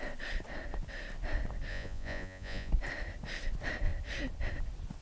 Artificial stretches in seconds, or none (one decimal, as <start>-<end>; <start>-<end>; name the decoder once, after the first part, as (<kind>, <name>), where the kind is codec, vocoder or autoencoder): 1.7-2.7 (vocoder, Vocos)